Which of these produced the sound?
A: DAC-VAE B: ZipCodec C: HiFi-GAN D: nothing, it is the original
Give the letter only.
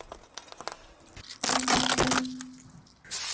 D